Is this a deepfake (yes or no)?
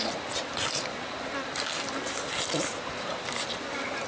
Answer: no